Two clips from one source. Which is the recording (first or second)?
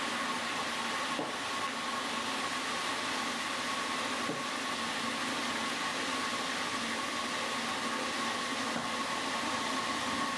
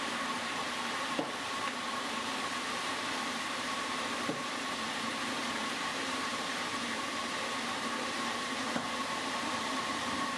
first